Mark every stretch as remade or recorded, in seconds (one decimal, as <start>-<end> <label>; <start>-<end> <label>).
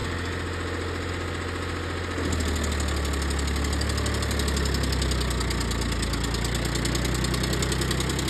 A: 0.0-8.3 recorded